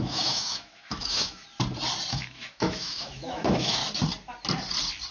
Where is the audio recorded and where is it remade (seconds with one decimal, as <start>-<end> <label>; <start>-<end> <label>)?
0.0-1.4 remade; 1.4-2.1 recorded; 2.1-3.8 remade; 3.8-5.1 recorded

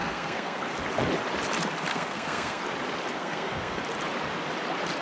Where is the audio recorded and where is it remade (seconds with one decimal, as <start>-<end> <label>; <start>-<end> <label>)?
0.0-0.6 remade; 0.6-1.9 recorded; 1.9-2.6 remade; 2.6-3.2 recorded; 3.2-3.8 remade; 3.8-5.0 recorded

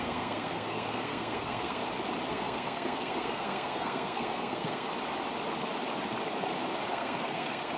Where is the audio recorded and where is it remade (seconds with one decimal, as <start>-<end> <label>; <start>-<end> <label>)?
0.0-1.8 remade; 1.8-2.3 recorded; 2.3-4.9 remade; 4.9-6.9 recorded; 6.9-7.8 remade

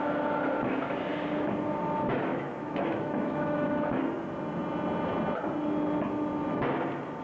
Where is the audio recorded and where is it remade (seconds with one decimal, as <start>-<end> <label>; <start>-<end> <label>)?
0.0-2.3 recorded; 2.3-4.0 remade; 4.0-7.2 recorded

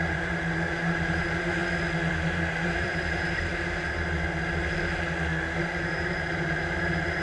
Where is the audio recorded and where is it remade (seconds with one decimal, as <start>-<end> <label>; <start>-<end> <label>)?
0.0-1.6 remade; 1.6-2.1 recorded; 2.1-3.5 remade; 3.5-5.6 recorded; 5.6-7.2 remade

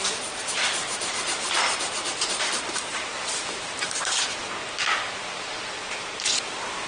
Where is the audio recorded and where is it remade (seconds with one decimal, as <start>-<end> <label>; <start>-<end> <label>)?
0.0-0.8 recorded; 0.8-4.9 remade; 4.9-6.9 recorded